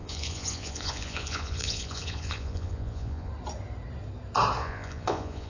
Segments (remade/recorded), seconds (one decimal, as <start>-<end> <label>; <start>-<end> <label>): 0.0-3.3 remade; 3.3-4.6 recorded; 4.6-5.5 remade